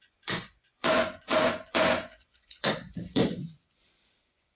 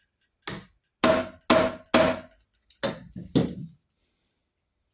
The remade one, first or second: first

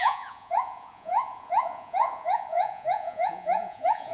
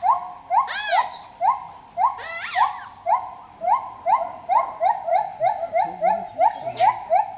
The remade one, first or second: first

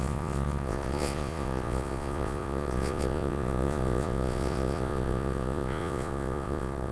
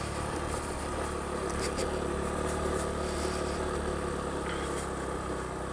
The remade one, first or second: first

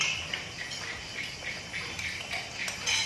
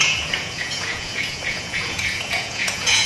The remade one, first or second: second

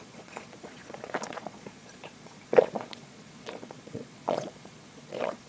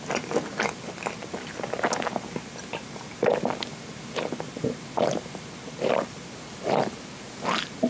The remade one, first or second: first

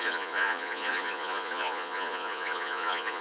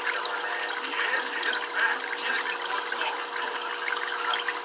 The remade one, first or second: first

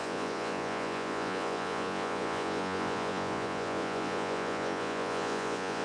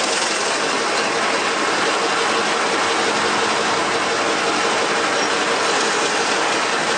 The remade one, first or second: first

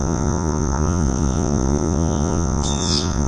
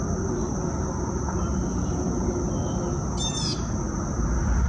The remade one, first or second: first